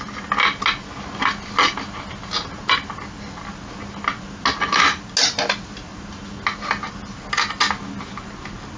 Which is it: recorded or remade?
recorded